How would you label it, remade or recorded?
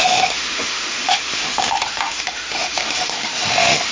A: remade